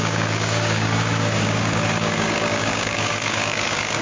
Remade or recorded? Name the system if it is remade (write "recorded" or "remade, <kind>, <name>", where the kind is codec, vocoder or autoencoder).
remade, codec, DAC